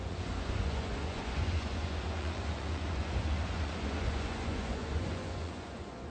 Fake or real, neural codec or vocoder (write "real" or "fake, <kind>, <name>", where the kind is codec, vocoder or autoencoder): fake, vocoder, Vocos